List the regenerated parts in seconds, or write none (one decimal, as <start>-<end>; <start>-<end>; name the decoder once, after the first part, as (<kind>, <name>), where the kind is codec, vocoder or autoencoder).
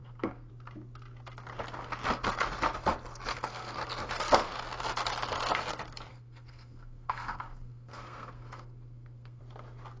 0.0-0.5 (codec, SNAC); 3.3-4.5; 6.1-9.4